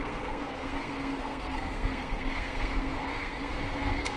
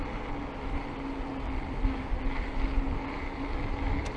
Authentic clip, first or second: second